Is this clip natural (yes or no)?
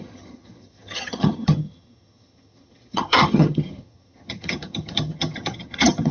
no